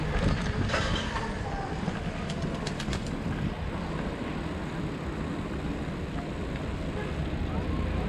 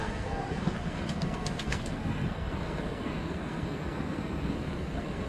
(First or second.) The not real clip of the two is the second